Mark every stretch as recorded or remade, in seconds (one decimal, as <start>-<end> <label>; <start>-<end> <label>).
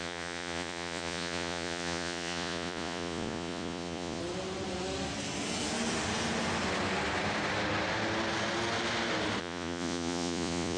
0.0-4.2 remade; 4.2-9.4 recorded; 9.4-10.8 remade